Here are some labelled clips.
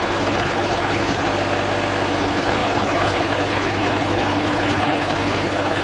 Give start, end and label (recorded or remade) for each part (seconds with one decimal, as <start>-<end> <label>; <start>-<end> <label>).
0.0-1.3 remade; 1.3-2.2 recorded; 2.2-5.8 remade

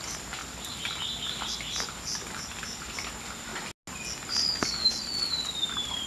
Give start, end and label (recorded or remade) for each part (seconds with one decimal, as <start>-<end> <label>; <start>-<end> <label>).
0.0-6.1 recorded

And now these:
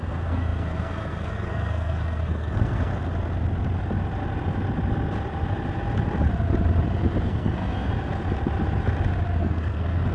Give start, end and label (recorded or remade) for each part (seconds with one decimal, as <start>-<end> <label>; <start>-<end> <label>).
0.0-2.9 remade; 2.9-7.2 recorded; 7.2-7.9 remade; 7.9-9.4 recorded; 9.4-10.1 remade

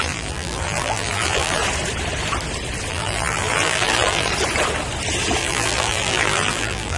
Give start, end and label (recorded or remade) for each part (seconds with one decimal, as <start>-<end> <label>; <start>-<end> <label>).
0.0-1.6 remade; 1.6-2.9 recorded; 2.9-4.3 remade; 4.3-5.4 recorded; 5.4-7.0 remade

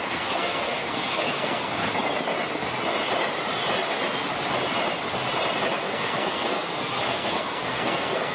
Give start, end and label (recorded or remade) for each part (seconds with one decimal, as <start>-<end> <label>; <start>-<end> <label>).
0.0-1.8 remade; 1.8-5.8 recorded; 5.8-8.3 remade

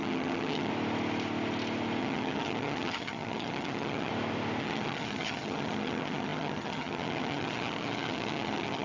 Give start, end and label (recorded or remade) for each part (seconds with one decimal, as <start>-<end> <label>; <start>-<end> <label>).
0.0-0.7 remade; 0.7-2.0 recorded; 2.0-4.1 remade; 4.1-4.6 recorded; 4.6-8.8 remade

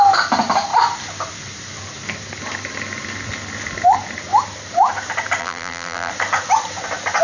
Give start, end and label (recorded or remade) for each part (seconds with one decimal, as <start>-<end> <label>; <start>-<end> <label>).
0.0-5.4 recorded; 5.4-6.1 remade; 6.1-7.2 recorded

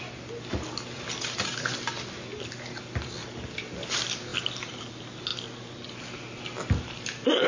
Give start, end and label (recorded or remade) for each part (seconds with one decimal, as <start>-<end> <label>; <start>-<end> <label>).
0.0-7.5 recorded